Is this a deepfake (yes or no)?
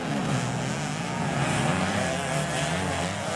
no